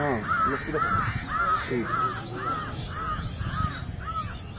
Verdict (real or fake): real